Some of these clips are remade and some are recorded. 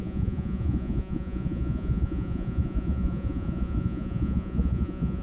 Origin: remade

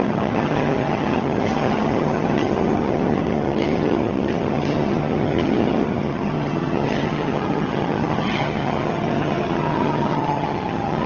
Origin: remade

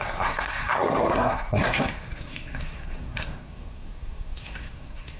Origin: remade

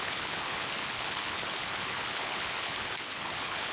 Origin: remade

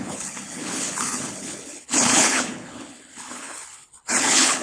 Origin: remade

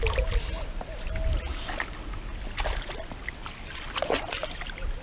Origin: recorded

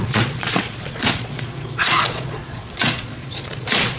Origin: remade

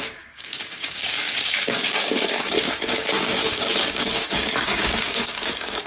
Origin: remade